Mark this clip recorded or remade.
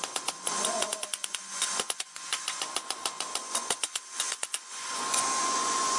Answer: remade